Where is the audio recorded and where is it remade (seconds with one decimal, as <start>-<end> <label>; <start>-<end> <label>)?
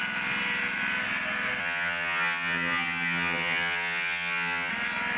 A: 0.0-1.6 recorded; 1.6-4.7 remade; 4.7-5.2 recorded